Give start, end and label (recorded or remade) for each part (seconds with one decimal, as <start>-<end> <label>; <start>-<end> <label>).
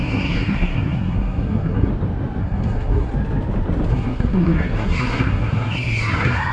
0.0-1.9 remade; 1.9-2.4 recorded; 2.4-3.1 remade; 3.1-3.9 recorded; 3.9-6.5 remade